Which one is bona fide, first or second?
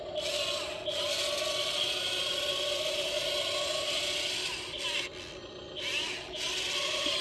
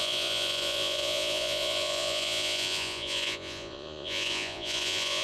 first